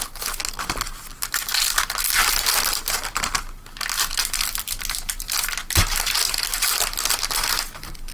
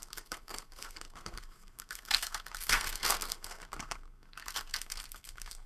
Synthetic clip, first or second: second